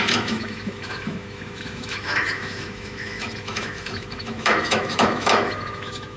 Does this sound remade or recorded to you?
remade